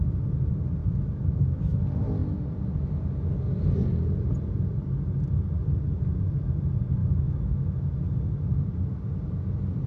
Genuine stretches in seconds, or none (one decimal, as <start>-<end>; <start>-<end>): 0.0-0.8; 1.8-7.0; 7.9-9.9